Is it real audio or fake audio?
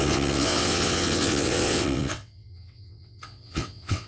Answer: fake